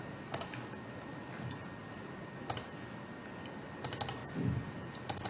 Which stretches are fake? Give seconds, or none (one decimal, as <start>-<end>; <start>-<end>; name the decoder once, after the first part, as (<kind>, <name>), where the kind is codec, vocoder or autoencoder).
none